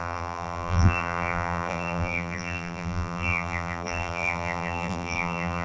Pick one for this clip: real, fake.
fake